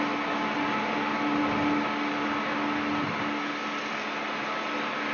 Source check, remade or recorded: recorded